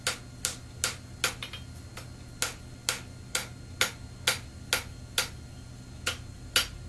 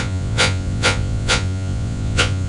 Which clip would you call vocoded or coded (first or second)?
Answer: second